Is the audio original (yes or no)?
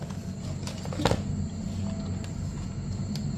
yes